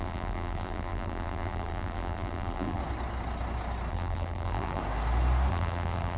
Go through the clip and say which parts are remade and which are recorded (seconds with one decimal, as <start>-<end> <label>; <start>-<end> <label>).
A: 0.0-2.8 remade; 2.8-3.9 recorded; 3.9-4.8 remade; 4.8-5.5 recorded; 5.5-6.2 remade